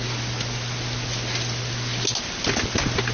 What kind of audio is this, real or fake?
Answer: real